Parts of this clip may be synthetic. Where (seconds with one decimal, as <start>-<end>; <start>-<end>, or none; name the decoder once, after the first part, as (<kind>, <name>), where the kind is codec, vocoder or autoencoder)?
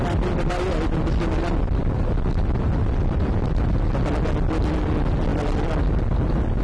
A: none